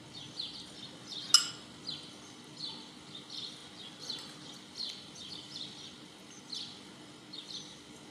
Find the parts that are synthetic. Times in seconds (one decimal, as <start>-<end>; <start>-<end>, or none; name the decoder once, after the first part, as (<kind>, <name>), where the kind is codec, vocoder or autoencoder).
none